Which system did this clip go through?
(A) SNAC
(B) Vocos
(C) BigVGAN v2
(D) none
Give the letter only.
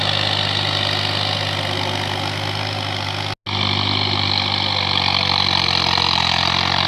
D